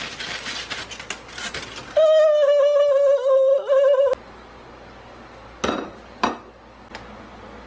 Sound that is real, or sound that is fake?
real